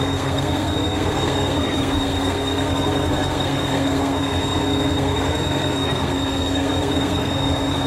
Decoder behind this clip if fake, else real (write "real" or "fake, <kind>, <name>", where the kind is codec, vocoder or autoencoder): fake, codec, SNAC